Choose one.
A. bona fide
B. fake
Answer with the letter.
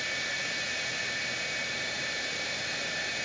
B